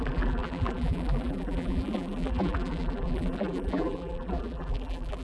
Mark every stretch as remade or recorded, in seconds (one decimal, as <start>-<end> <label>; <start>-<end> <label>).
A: 0.0-5.2 remade